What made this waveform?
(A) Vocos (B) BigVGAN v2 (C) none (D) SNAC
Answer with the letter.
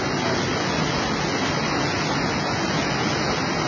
C